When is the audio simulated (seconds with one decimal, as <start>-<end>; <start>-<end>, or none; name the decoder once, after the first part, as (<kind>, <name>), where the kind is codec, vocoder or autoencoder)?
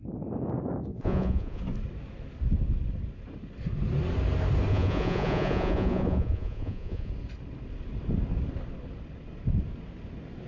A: 0.9-1.6 (vocoder, Vocos); 4.7-7.1